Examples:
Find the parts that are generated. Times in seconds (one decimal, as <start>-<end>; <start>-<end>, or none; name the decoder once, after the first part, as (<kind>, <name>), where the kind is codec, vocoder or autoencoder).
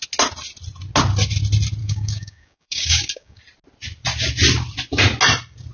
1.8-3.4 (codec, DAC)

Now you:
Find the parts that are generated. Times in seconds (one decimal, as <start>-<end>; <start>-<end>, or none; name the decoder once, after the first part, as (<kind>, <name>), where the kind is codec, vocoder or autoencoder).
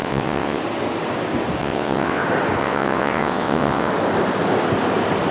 0.0-0.6 (vocoder, WaveNeXt); 1.6-2.2; 2.6-3.9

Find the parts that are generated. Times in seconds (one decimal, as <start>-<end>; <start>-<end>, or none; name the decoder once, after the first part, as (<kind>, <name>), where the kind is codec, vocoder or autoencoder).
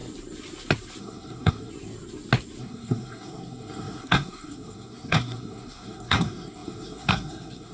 1.0-1.7 (codec, SNAC); 2.6-7.7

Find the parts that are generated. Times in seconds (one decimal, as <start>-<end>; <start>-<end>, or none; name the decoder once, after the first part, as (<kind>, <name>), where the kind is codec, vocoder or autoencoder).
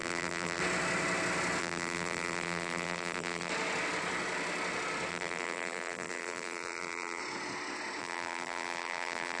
0.0-0.6 (vocoder, BigVGAN v2); 1.6-3.5; 5.1-7.2; 8.0-9.4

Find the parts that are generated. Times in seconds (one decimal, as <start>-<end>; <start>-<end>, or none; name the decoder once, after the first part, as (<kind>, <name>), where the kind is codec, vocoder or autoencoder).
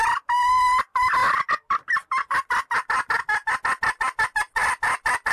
none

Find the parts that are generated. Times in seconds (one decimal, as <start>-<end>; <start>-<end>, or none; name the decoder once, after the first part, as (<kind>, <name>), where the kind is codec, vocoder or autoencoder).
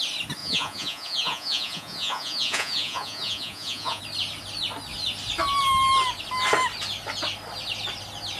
0.4-4.0 (vocoder, Vocos)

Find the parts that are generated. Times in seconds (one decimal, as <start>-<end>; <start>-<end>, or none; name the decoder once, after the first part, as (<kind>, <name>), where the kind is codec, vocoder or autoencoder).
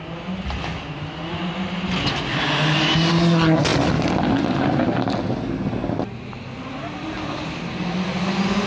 none